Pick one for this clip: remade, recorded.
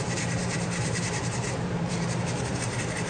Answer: remade